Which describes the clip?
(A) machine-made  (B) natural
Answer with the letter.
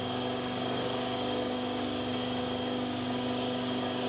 A